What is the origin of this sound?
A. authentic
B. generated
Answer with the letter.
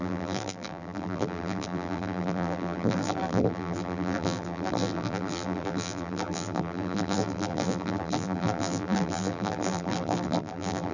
B